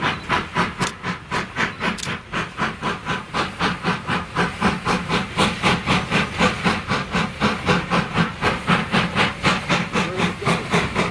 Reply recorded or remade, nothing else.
recorded